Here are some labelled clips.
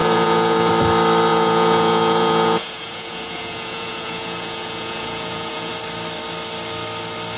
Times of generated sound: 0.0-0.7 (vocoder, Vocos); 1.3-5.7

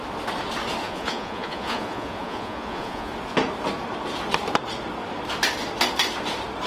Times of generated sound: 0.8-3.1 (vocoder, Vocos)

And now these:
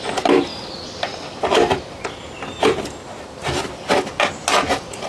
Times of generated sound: none